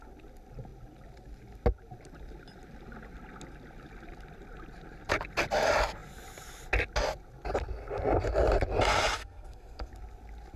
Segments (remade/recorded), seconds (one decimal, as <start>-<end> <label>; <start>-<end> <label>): 0.0-9.2 recorded; 9.2-9.9 remade; 9.9-10.6 recorded